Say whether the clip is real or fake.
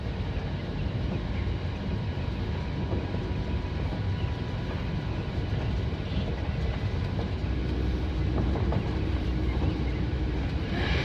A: real